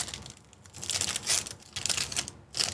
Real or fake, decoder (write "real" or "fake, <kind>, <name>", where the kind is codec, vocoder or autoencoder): real